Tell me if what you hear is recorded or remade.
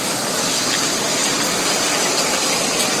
recorded